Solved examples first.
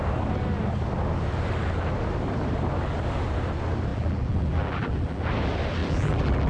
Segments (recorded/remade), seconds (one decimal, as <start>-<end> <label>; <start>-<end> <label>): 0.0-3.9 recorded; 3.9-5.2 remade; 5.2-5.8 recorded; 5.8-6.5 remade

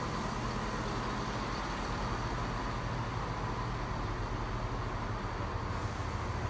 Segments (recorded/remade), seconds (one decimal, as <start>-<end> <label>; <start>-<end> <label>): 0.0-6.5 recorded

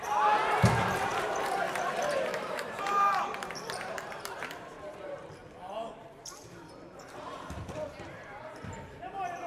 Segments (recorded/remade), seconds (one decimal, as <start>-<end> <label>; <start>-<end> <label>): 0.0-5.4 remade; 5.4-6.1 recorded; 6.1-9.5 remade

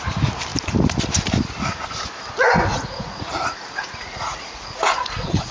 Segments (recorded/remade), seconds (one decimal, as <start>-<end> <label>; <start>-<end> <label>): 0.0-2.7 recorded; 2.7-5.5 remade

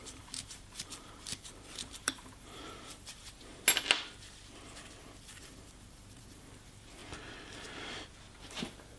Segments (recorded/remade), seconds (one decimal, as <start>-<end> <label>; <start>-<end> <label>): 0.0-3.5 remade; 3.5-5.0 recorded; 5.0-7.0 remade; 7.0-8.4 recorded; 8.4-9.0 remade